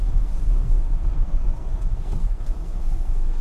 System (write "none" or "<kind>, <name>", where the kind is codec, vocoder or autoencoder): codec, SNAC